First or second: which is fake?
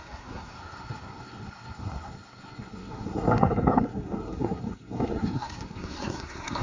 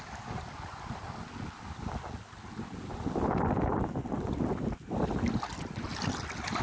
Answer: first